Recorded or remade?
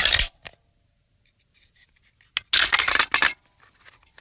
recorded